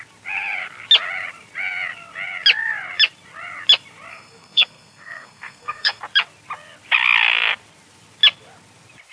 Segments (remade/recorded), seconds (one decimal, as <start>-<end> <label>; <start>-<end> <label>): 0.0-4.1 recorded; 4.1-6.0 remade; 6.0-9.1 recorded